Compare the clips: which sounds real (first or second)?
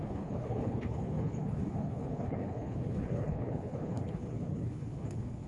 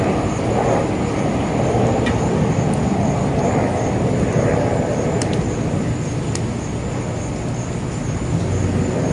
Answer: second